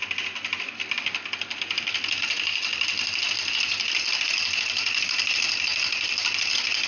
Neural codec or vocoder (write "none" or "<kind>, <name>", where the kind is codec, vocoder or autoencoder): none